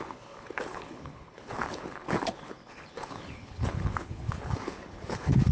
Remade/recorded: remade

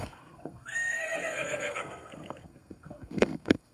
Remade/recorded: remade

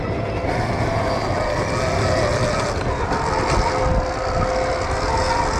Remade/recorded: recorded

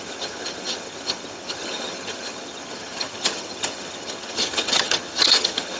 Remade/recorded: remade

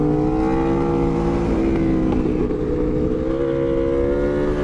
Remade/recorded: recorded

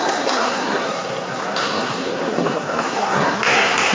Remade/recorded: remade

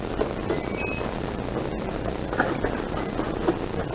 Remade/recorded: recorded